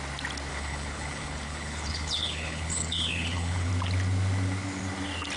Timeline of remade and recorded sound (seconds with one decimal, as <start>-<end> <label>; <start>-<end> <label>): 0.0-0.5 recorded; 0.5-3.7 remade; 3.7-5.4 recorded

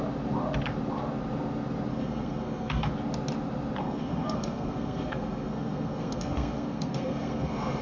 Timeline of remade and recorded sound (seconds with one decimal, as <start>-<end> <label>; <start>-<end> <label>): 0.0-1.9 recorded; 1.9-2.9 remade; 2.9-3.8 recorded; 3.8-7.8 remade